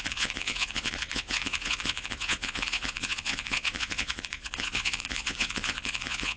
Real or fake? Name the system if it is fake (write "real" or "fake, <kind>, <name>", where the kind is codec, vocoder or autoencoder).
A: fake, vocoder, Vocos